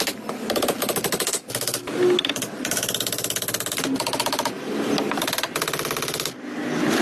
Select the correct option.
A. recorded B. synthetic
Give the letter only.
A